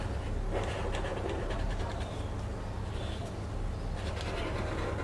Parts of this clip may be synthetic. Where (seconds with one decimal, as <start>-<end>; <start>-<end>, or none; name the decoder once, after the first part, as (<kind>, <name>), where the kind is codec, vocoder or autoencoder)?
1.1-1.8 (vocoder, BigVGAN v2)